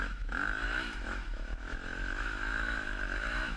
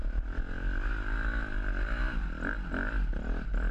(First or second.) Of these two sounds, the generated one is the first